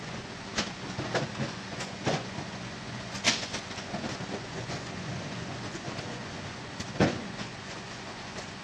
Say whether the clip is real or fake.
fake